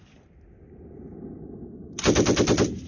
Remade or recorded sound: recorded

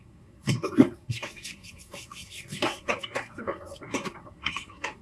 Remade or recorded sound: remade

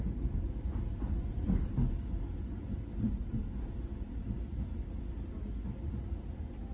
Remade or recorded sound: recorded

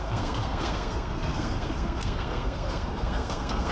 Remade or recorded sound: remade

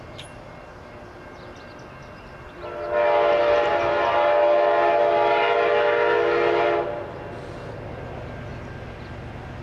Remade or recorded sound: recorded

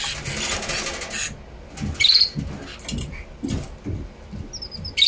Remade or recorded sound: recorded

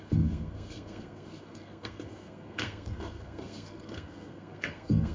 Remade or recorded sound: remade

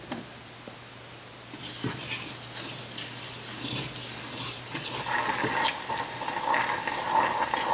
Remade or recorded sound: recorded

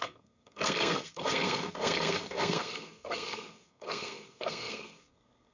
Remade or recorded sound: remade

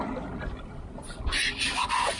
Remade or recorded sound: recorded